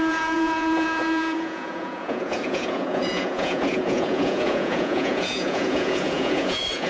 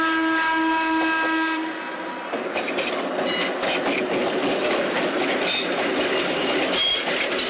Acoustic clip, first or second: second